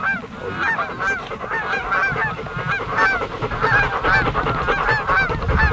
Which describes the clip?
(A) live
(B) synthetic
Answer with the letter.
A